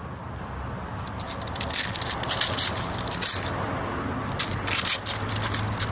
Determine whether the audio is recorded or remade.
recorded